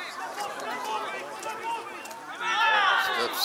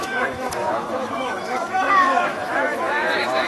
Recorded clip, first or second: first